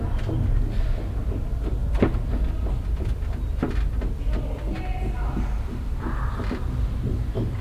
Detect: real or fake real